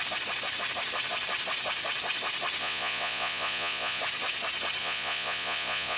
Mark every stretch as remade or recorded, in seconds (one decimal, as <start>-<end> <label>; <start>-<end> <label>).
0.0-2.6 recorded; 2.6-4.0 remade; 4.0-4.8 recorded; 4.8-6.0 remade